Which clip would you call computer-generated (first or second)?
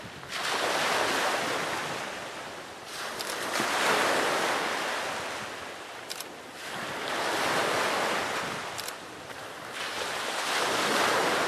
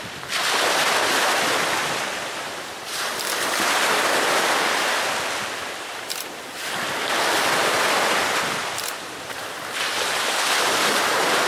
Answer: second